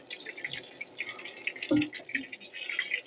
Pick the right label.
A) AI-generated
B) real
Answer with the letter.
B